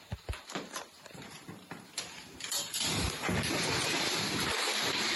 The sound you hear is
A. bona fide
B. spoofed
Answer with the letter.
B